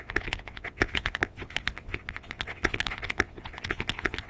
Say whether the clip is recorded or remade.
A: remade